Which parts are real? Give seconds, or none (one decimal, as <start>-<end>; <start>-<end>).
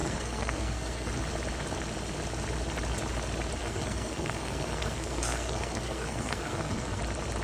1.1-3.6; 7.0-7.4